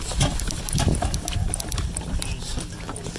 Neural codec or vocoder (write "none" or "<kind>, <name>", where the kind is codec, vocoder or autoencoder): none